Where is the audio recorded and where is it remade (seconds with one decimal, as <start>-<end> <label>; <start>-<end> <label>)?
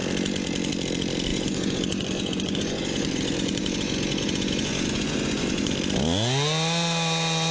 0.0-1.3 recorded; 1.3-5.7 remade; 5.7-7.5 recorded